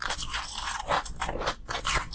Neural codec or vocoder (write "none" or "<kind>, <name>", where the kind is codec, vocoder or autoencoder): none